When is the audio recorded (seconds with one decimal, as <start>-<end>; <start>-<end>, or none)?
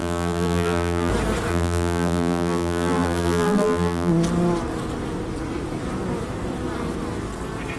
1.1-1.5; 4.1-7.8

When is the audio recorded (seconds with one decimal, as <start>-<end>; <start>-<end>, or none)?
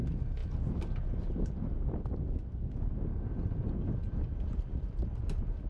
0.0-5.7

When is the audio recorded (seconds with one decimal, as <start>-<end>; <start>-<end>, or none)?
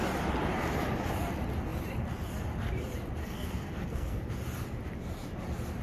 0.0-3.2; 4.3-5.8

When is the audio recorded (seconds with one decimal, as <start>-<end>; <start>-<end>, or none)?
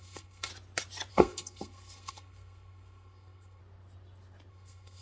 0.5-1.1; 3.6-4.5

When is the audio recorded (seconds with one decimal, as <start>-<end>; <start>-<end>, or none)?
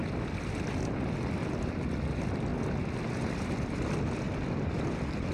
0.0-5.3